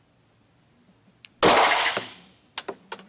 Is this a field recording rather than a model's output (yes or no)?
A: yes